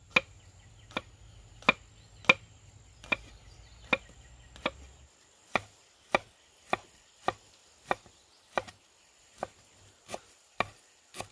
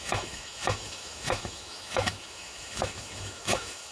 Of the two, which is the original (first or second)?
first